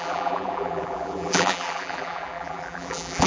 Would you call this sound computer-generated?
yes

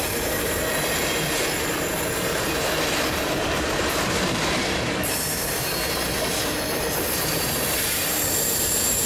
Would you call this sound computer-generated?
yes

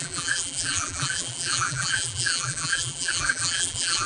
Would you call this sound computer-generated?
yes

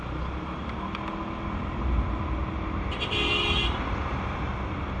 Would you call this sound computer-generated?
no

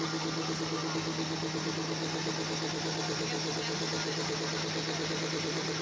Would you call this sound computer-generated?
no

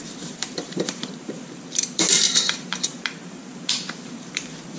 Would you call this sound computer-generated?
yes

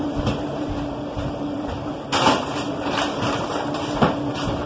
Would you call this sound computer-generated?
yes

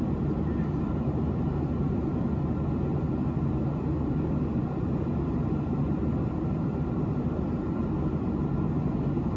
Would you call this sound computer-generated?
yes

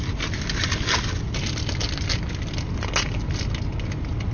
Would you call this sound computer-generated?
no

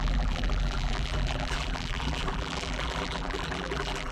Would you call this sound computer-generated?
yes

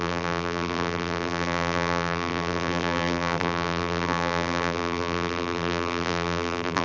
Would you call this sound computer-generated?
yes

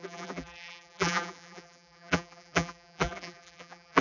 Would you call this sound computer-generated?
yes